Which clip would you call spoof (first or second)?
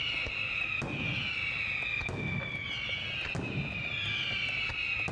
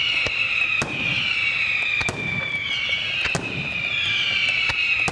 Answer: second